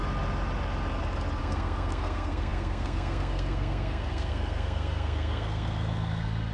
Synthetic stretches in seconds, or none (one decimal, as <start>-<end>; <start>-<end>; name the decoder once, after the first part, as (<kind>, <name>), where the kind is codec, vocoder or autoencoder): 1.4-6.5 (codec, SNAC)